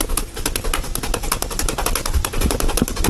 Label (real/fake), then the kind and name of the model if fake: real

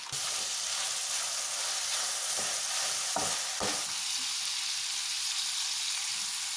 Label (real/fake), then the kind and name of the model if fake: real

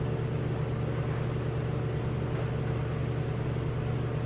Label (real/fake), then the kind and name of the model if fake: real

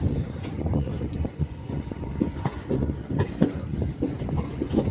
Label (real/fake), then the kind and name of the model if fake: fake, vocoder, Vocos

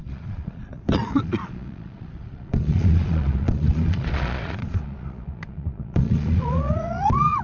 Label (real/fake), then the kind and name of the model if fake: fake, vocoder, Vocos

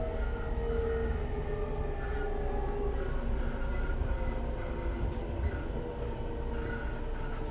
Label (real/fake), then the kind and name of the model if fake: real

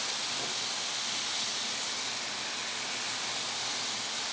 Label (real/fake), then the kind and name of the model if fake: real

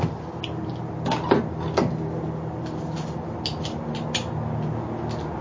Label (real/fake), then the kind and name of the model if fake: real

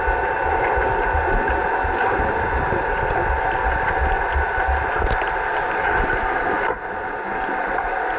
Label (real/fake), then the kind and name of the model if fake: real